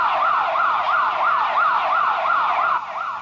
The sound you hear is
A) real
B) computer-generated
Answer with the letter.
A